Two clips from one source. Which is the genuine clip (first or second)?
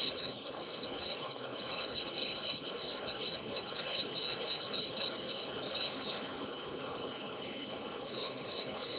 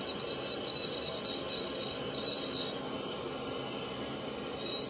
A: second